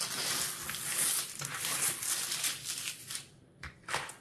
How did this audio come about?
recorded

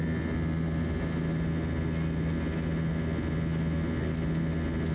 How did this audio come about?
recorded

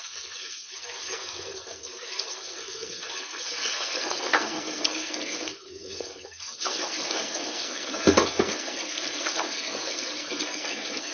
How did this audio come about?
remade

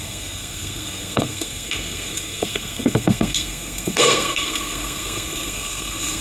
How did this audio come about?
remade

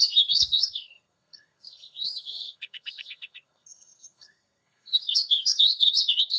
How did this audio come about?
remade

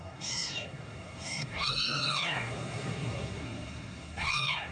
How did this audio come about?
remade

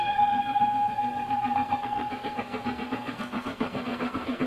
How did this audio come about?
remade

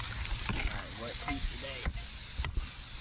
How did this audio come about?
recorded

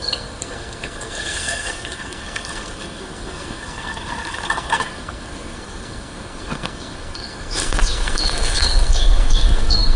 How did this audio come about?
remade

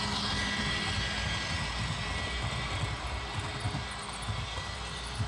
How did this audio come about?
recorded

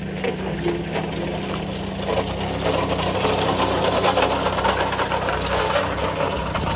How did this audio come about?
recorded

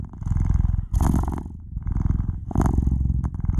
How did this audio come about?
recorded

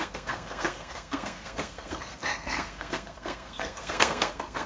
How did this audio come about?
remade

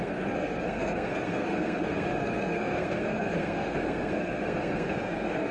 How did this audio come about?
remade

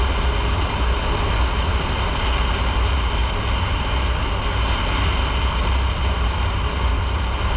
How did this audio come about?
recorded